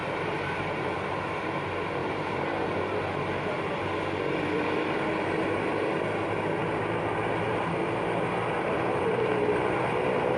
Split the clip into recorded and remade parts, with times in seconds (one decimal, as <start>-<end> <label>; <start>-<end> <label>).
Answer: 0.0-1.4 remade; 1.4-2.0 recorded; 2.0-3.8 remade; 3.8-10.4 recorded